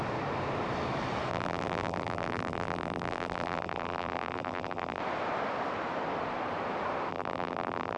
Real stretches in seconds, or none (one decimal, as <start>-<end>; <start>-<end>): 0.0-1.3; 5.0-7.1